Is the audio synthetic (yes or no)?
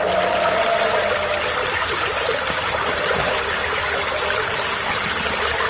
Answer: no